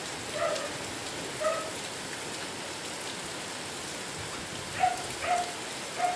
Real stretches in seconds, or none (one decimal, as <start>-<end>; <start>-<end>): 0.0-1.0; 3.3-6.2